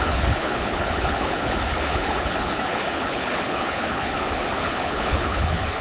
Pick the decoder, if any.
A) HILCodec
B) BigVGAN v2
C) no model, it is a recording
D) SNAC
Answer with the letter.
A